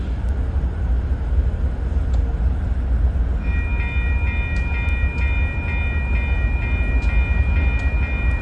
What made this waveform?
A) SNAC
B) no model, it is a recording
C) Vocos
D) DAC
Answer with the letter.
B